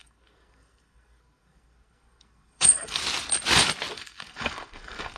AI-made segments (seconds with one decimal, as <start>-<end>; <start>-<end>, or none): 0.0-3.0; 3.9-5.2